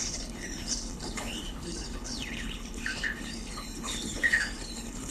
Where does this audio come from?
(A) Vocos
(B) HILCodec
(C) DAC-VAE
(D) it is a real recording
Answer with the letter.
B